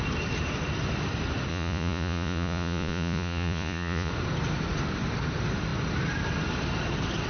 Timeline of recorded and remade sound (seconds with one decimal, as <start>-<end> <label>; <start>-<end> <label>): 0.0-1.5 recorded; 1.5-4.1 remade; 4.1-7.3 recorded